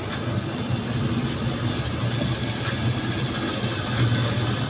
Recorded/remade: recorded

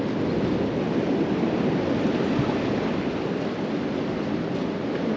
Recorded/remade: recorded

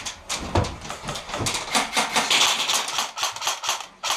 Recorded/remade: recorded